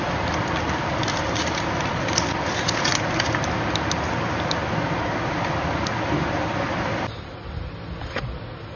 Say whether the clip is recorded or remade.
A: recorded